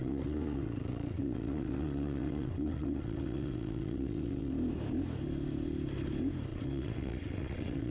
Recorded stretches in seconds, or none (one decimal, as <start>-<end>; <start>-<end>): 4.5-6.5